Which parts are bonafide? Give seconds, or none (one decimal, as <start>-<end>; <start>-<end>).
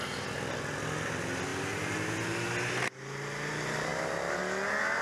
0.0-5.0